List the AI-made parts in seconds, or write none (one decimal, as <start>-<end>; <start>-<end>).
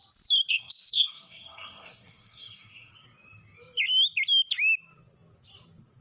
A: 0.5-2.9